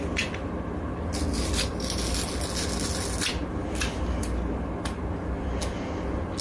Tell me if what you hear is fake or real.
real